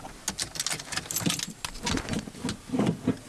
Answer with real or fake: real